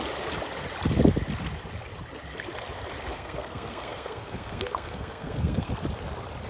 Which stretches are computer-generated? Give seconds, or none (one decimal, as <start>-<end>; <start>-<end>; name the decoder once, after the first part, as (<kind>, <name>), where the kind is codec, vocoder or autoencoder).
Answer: 3.1-5.7 (codec, SNAC)